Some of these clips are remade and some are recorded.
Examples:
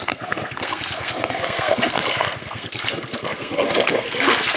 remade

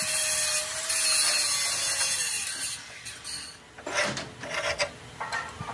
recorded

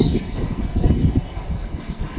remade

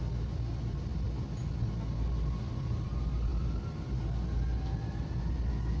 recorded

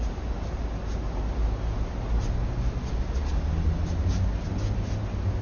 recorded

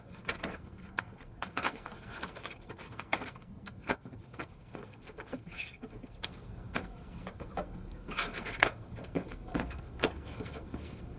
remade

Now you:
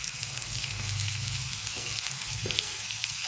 remade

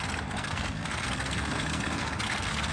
remade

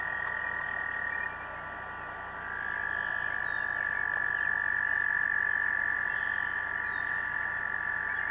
recorded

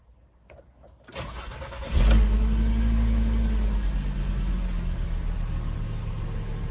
recorded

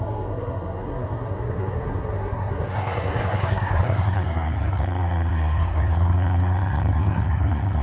remade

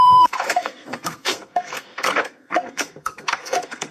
remade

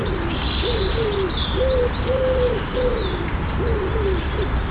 recorded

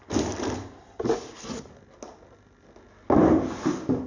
recorded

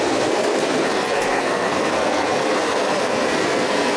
remade